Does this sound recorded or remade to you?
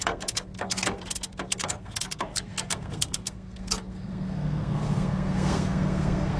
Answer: remade